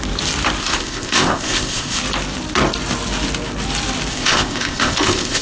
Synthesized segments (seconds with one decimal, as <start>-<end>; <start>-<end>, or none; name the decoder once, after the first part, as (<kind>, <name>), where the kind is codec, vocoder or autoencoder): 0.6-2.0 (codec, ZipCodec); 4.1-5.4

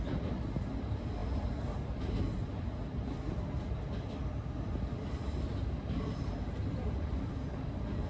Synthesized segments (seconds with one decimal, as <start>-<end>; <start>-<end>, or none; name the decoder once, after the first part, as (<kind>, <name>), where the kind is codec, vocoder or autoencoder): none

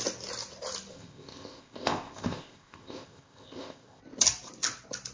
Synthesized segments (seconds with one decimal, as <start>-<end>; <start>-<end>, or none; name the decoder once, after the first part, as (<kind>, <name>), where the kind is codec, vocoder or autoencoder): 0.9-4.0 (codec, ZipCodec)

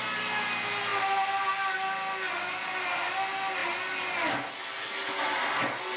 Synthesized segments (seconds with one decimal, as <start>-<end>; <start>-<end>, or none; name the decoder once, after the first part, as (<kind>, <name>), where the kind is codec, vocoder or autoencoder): none

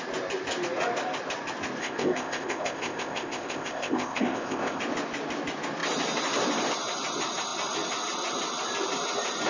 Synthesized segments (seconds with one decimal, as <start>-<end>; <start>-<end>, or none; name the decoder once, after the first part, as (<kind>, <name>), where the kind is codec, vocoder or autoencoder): 1.8-4.8 (codec, ZipCodec)